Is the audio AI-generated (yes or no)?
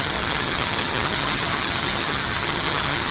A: yes